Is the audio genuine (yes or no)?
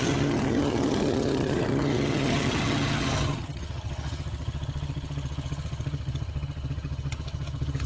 no